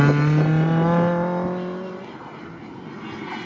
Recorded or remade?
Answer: recorded